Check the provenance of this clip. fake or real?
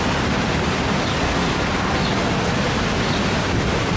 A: real